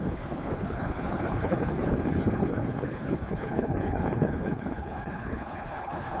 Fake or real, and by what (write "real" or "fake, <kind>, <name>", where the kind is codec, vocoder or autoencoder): fake, codec, HILCodec